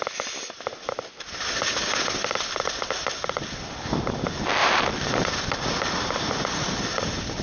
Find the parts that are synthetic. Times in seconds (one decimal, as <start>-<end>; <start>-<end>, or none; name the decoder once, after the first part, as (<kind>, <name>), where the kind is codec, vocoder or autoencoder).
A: 4.6-5.5 (vocoder, BigVGAN v2)